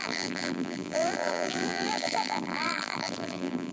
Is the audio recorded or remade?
remade